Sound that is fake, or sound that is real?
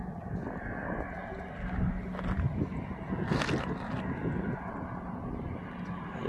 real